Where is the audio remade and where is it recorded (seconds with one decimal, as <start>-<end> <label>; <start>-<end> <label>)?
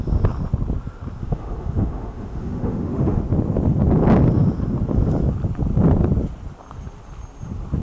0.0-1.2 recorded; 1.2-3.2 remade; 3.2-7.8 recorded